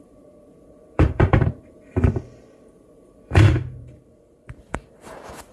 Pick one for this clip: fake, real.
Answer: fake